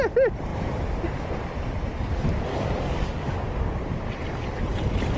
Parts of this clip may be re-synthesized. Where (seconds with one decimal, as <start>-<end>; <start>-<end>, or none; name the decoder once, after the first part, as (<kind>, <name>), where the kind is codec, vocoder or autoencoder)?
2.5-3.4 (codec, DAC)